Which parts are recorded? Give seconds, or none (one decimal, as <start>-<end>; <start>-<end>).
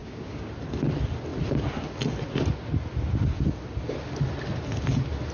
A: 0.5-5.3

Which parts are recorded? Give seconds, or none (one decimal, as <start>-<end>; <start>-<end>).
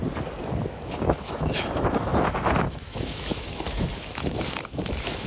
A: 0.0-0.6